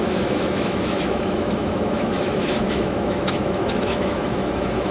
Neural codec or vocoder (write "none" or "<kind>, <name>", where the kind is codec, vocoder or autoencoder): autoencoder, DAC-VAE